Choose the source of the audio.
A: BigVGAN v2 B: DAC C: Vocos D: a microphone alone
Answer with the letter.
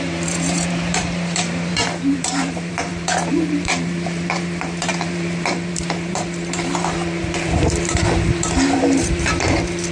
A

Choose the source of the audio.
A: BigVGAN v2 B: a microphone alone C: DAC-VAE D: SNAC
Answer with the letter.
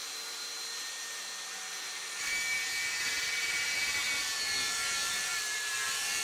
A